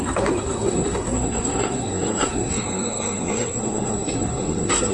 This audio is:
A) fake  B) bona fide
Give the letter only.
A